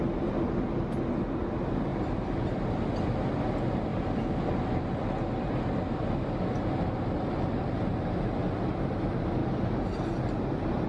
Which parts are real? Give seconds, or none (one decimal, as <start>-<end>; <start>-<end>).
0.0-10.9